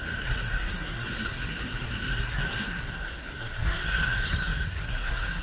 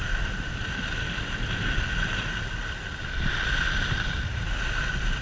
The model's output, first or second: first